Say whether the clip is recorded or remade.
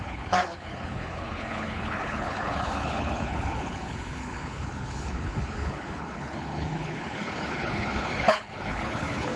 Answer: remade